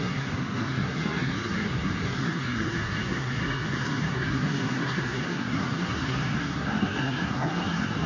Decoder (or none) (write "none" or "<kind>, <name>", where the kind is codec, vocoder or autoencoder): codec, SNAC